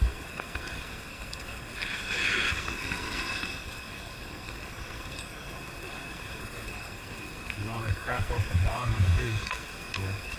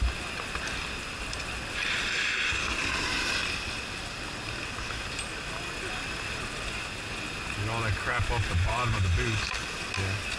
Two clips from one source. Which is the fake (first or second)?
first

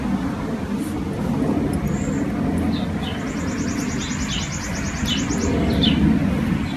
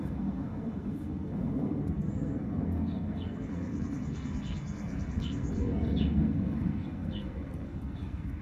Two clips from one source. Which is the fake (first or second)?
second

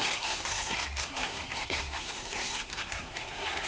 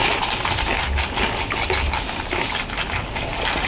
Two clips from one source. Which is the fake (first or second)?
first